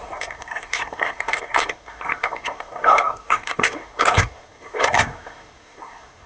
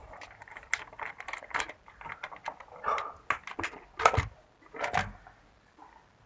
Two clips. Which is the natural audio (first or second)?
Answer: second